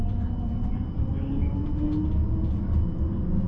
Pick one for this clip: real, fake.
real